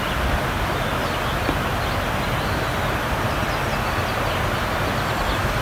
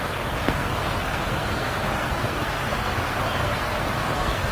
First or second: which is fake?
second